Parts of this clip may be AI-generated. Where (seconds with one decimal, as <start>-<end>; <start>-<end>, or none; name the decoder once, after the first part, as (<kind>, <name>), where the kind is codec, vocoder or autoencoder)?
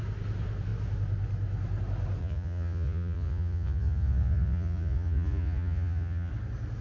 2.2-6.3 (vocoder, Vocos)